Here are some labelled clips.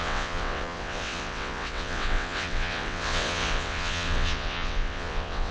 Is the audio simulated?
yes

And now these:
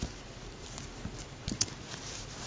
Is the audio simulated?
no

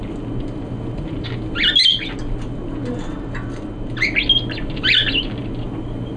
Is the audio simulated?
no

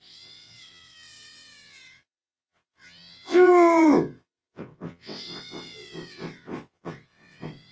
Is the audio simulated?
yes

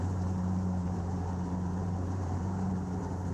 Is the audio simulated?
yes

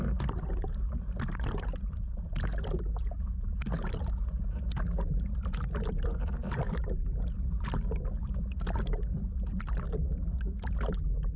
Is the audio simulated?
no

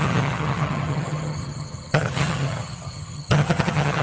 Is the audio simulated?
yes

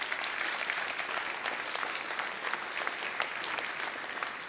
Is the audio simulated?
no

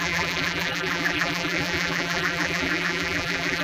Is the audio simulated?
yes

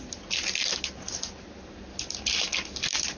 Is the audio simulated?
no